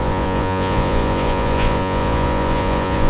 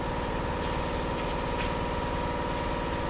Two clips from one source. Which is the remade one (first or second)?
first